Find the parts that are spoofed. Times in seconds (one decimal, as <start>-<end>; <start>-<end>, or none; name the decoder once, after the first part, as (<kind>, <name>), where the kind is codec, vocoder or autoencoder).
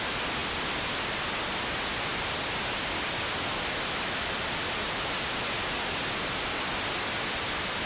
none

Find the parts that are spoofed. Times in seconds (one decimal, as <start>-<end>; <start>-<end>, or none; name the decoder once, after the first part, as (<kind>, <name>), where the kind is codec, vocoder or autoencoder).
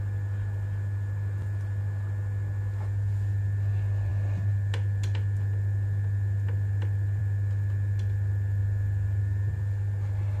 8.6-9.2 (vocoder, BigVGAN v2)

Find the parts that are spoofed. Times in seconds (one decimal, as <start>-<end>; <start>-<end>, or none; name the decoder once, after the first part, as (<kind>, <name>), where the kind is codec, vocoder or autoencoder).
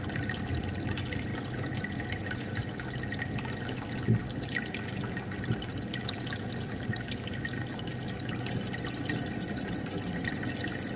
none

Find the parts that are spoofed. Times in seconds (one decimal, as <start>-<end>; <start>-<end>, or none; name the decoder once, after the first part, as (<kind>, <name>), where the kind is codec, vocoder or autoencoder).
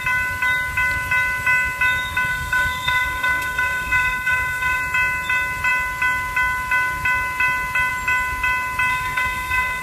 2.3-4.8 (codec, SNAC); 8.9-9.8